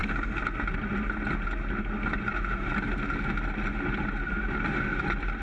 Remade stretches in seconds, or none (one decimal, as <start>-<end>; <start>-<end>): none